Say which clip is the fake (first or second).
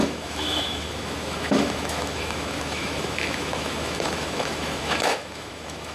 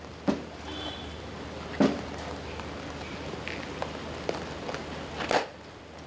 first